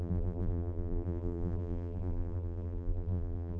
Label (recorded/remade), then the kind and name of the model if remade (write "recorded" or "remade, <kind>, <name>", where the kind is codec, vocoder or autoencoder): remade, vocoder, BigVGAN v2